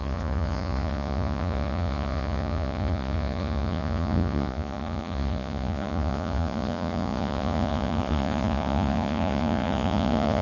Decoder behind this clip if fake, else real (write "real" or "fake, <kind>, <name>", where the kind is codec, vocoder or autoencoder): fake, vocoder, Vocos